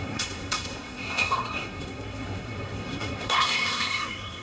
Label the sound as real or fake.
fake